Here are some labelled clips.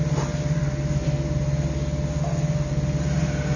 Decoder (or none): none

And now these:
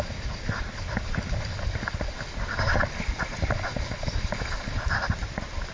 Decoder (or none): none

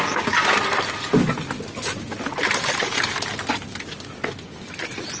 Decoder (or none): none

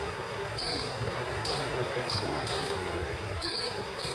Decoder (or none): codec, SNAC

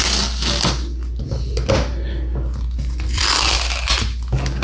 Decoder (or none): none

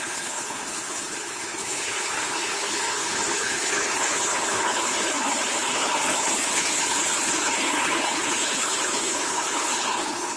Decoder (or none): codec, HILCodec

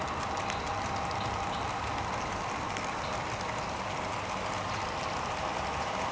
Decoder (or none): none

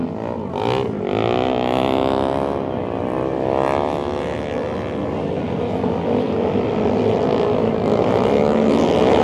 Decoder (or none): vocoder, BigVGAN v2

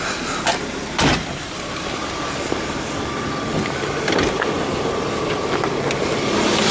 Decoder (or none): none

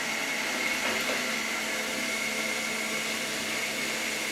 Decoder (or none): none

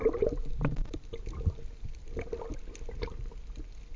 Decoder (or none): none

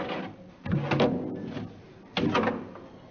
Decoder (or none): none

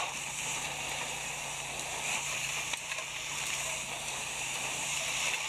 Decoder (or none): vocoder, BigVGAN v2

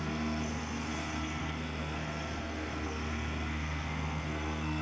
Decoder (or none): codec, SNAC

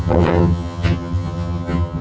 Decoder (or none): vocoder, HiFi-GAN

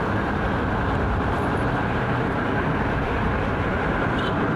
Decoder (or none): vocoder, BigVGAN v2